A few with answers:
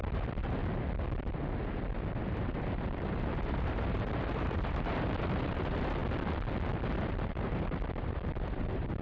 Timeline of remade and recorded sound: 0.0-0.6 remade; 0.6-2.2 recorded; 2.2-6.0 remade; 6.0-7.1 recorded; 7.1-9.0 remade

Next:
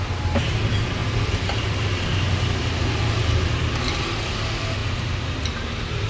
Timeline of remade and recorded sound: 0.0-1.0 recorded; 1.0-4.0 remade; 4.0-4.8 recorded; 4.8-5.3 remade; 5.3-6.1 recorded

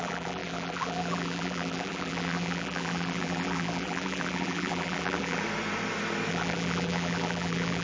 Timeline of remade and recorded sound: 0.0-5.4 remade; 5.4-6.3 recorded; 6.3-7.8 remade